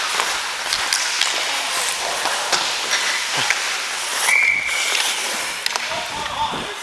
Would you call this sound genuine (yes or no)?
yes